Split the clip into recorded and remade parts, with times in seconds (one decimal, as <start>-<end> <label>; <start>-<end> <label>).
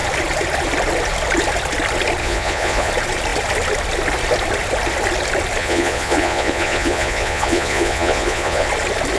0.0-2.2 recorded; 2.2-2.9 remade; 2.9-5.6 recorded; 5.6-8.7 remade; 8.7-9.2 recorded